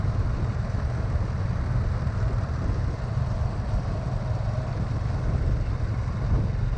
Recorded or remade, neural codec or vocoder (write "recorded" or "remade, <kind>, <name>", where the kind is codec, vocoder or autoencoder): recorded